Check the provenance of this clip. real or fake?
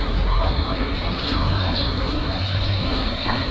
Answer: fake